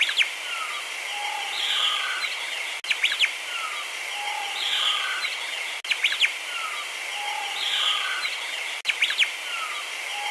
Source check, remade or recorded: recorded